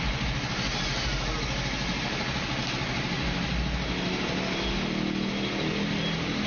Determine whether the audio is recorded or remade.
recorded